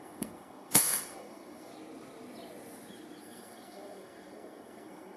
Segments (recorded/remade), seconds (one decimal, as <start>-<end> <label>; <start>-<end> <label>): 0.0-1.7 remade; 1.7-3.2 recorded; 3.2-5.2 remade